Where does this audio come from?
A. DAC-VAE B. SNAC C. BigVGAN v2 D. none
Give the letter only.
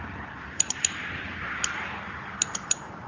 C